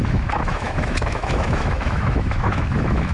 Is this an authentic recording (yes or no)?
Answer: no